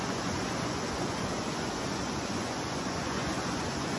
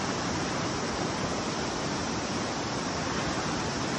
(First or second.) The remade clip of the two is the first